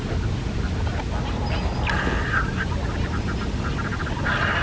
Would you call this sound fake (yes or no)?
no